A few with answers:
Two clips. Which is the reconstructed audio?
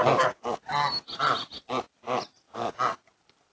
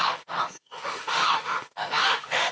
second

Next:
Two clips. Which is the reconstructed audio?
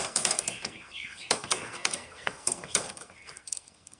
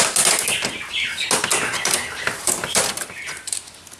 first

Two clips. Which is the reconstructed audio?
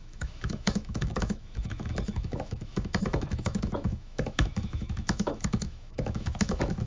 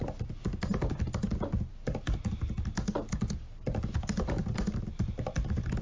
first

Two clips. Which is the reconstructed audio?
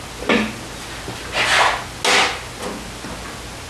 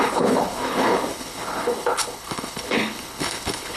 second